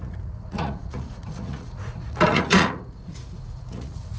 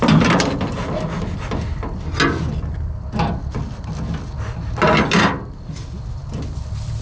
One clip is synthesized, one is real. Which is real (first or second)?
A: second